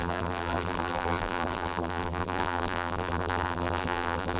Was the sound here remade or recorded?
remade